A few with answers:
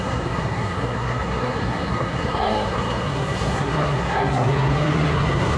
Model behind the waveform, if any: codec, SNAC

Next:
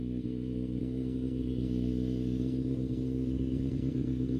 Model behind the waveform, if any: codec, SNAC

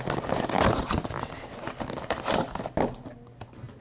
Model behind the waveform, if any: none